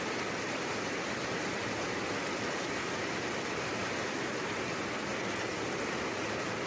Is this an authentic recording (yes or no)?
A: no